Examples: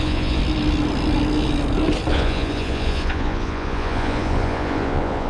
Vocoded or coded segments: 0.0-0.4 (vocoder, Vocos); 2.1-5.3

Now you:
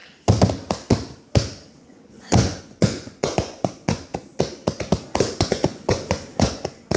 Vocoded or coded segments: 1.8-4.1 (vocoder, Vocos); 5.2-7.0

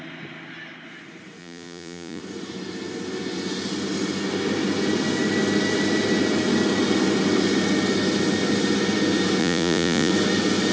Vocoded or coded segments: 1.4-2.2 (vocoder, Vocos); 9.4-10.1

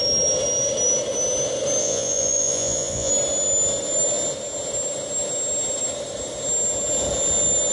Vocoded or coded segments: 1.8-3.1 (vocoder, Vocos)

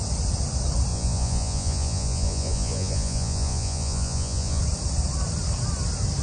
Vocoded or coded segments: 0.9-4.6 (vocoder, Vocos)

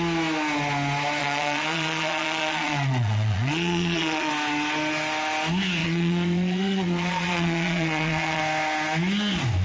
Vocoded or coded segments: 1.2-4.3 (vocoder, Vocos); 5.8-8.4